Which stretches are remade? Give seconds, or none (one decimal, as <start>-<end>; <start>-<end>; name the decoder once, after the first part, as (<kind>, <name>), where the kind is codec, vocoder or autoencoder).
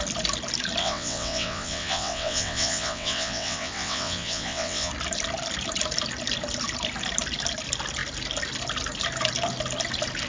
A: 0.8-4.9 (vocoder, WaveNeXt)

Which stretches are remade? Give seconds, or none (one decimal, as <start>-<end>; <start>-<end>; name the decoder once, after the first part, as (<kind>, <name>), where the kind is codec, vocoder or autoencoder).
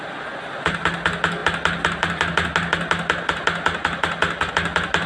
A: none